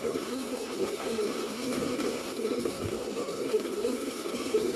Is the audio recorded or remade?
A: remade